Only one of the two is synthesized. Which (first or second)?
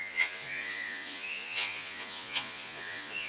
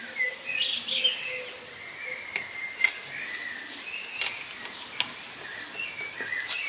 first